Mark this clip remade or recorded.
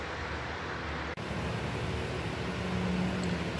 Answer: recorded